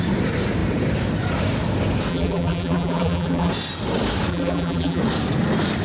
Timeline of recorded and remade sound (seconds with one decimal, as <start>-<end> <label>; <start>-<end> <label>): 0.0-2.1 recorded; 2.1-3.5 remade; 3.5-4.3 recorded; 4.3-5.0 remade; 5.0-5.8 recorded